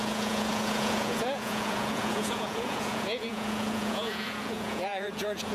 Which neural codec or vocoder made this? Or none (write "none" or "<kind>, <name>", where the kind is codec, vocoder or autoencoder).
vocoder, Vocos